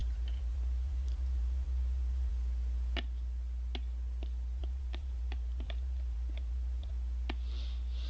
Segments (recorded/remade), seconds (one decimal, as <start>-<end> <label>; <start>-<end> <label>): 0.0-2.3 remade; 2.3-4.6 recorded; 4.6-6.9 remade; 6.9-8.1 recorded